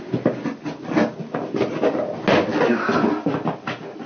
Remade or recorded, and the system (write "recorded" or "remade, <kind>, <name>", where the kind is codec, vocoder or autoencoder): recorded